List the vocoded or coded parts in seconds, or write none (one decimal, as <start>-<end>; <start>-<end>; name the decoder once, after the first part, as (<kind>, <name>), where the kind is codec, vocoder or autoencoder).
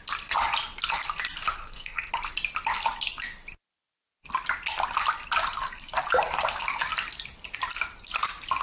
1.6-2.1 (codec, SNAC)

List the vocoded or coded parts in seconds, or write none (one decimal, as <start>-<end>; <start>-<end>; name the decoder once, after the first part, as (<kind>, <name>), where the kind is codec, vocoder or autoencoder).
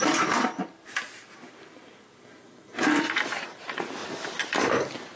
none